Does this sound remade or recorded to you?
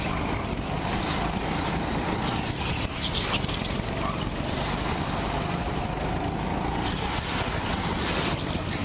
recorded